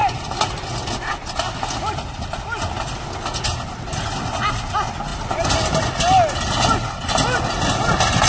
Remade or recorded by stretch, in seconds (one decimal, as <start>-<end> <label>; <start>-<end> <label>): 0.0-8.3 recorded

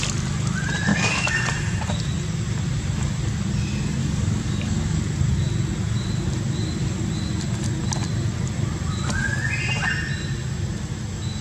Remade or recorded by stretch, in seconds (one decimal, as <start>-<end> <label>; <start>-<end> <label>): 0.0-0.9 recorded; 0.9-1.4 remade; 1.4-4.0 recorded; 4.0-5.0 remade; 5.0-11.4 recorded

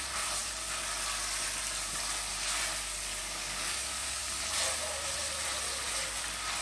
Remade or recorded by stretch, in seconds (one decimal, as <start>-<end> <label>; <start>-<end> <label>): 0.0-3.2 recorded; 3.2-4.2 remade; 4.2-6.6 recorded

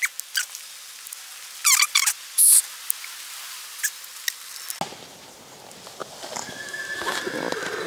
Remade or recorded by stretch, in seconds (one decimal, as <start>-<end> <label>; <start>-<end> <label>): 0.0-7.9 recorded

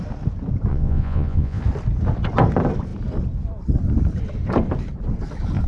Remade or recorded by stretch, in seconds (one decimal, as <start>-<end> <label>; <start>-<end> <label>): 0.0-0.7 recorded; 0.7-1.6 remade; 1.6-5.7 recorded

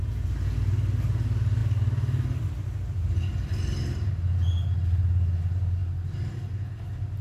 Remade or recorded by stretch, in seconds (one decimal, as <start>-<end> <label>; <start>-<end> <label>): 0.0-7.2 recorded